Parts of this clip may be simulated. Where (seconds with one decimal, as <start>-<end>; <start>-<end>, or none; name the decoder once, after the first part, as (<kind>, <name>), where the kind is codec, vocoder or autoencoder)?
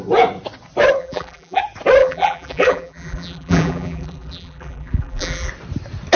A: 1.0-1.6 (vocoder, BigVGAN v2); 2.0-5.5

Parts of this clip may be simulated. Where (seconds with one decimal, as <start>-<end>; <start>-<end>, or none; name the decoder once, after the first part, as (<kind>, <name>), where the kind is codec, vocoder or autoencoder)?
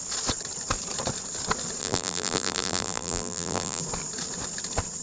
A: 1.8-3.8 (vocoder, BigVGAN v2)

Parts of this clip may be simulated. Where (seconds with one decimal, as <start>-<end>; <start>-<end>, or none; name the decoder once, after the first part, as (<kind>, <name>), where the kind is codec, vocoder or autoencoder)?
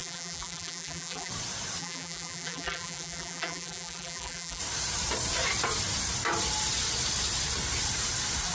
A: 0.0-1.3 (vocoder, BigVGAN v2); 1.8-4.6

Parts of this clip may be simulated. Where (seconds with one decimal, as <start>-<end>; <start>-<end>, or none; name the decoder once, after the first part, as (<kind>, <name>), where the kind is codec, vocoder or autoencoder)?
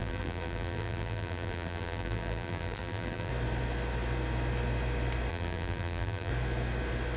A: 0.0-3.3 (vocoder, BigVGAN v2); 5.3-6.3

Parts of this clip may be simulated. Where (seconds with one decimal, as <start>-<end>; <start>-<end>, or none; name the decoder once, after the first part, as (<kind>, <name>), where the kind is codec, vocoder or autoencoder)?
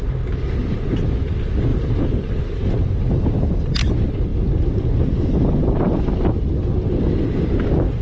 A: 0.6-1.2 (vocoder, BigVGAN v2); 1.7-2.9; 4.3-6.0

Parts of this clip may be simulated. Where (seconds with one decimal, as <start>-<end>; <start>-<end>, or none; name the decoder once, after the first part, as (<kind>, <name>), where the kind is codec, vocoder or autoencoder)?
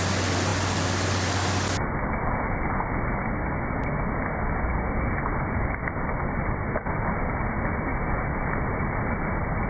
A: none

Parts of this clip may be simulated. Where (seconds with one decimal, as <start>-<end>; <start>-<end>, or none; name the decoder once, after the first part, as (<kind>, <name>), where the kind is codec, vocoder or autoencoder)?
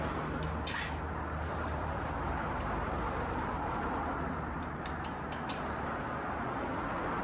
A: 1.5-5.8 (vocoder, BigVGAN v2)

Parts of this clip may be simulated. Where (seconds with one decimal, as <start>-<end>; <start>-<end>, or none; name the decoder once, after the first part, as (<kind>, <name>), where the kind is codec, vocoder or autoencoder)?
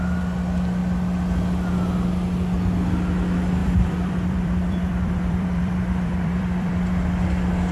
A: 3.6-6.9 (vocoder, BigVGAN v2)